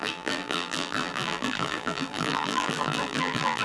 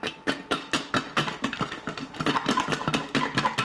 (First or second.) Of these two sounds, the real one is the second